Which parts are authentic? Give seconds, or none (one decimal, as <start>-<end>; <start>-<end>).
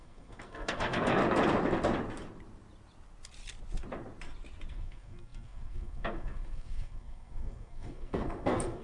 1.2-4.7